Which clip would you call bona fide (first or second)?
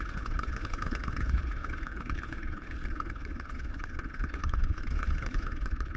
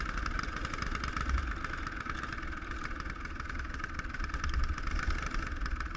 second